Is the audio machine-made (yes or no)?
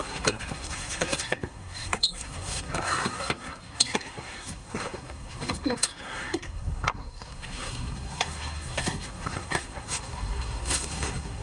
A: yes